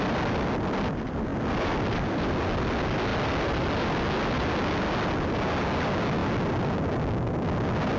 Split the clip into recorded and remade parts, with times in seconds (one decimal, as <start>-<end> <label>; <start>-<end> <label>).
0.0-8.0 recorded